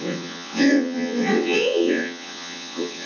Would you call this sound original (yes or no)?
no